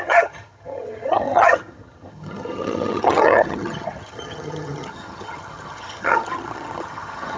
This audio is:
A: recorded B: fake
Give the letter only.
B